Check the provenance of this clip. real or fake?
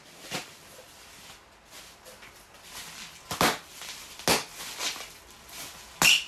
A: real